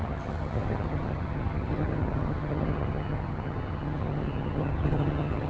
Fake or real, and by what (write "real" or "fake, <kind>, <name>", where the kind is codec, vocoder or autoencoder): fake, vocoder, HiFi-GAN